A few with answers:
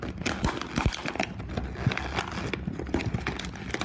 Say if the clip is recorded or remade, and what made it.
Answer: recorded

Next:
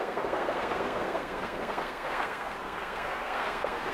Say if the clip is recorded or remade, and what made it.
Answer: remade, codec, SNAC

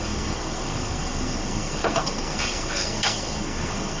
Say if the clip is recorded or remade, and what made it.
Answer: remade, codec, SNAC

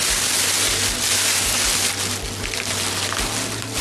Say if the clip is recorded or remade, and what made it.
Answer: recorded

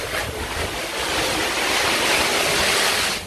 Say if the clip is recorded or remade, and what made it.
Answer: recorded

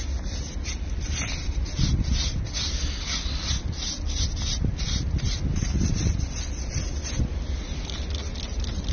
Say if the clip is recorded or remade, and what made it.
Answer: recorded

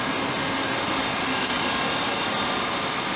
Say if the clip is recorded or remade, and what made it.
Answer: recorded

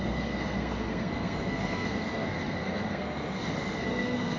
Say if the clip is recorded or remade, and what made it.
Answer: remade, codec, SNAC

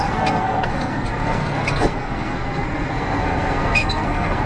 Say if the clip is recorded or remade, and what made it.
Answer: remade, codec, SNAC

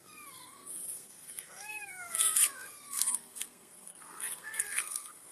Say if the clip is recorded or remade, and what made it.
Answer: remade, codec, SNAC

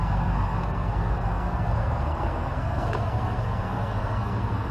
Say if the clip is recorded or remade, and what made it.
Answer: remade, codec, SNAC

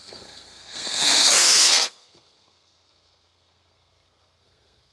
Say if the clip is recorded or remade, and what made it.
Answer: remade, codec, SNAC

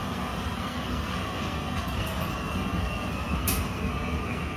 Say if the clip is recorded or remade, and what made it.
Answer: remade, codec, SNAC